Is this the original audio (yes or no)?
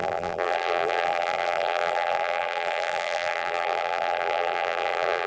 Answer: no